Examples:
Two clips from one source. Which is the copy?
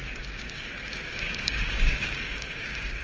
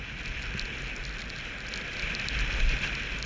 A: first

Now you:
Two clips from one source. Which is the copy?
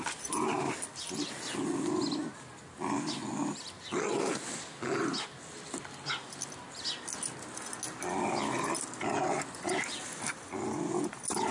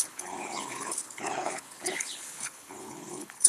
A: second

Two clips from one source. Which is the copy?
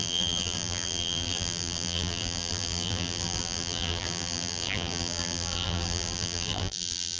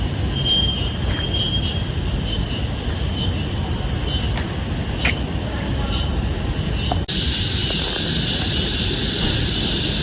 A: first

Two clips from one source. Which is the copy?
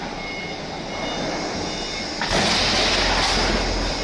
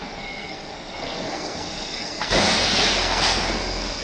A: second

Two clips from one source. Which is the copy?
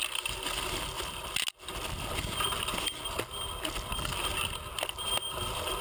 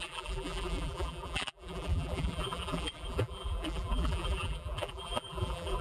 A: second